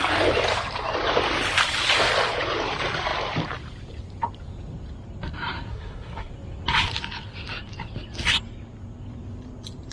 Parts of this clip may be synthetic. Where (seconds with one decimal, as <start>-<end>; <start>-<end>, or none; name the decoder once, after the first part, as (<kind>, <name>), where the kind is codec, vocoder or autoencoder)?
5.7-6.3 (codec, SNAC)